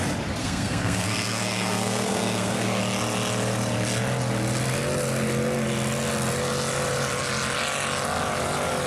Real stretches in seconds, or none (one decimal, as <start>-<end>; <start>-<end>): 0.0-0.4; 2.8-8.9